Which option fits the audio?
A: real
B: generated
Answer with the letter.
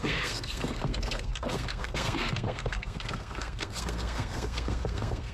B